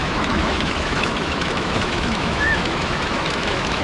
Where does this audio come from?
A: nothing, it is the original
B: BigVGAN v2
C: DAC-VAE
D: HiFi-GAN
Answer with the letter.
C